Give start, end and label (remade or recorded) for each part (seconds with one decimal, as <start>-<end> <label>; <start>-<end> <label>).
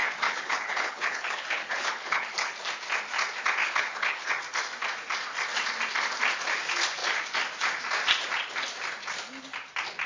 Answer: 0.0-2.6 remade; 2.6-3.6 recorded; 3.6-4.3 remade; 4.3-10.1 recorded